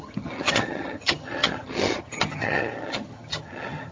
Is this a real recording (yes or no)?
no